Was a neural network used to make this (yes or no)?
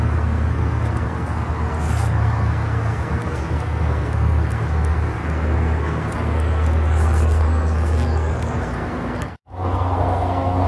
yes